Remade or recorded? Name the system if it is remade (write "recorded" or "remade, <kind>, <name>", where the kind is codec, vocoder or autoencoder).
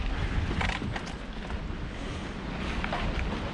recorded